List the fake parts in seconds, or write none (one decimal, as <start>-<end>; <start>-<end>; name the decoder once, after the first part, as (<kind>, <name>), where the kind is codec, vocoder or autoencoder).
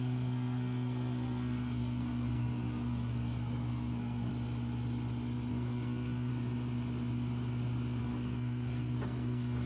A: 0.0-4.3 (codec, SNAC); 5.5-6.3; 8.0-9.7